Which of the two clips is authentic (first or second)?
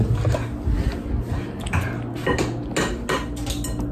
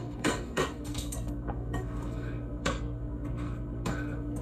first